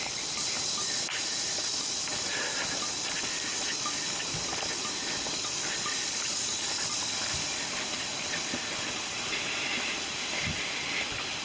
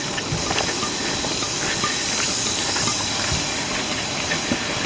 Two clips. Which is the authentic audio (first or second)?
second